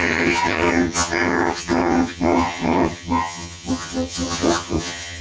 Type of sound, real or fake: fake